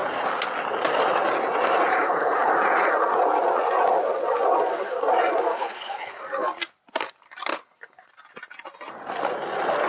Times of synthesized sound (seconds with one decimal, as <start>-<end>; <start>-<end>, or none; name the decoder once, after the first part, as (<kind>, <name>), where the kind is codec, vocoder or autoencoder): 2.0-2.5 (codec, HILCodec); 5.5-6.2; 7.5-8.1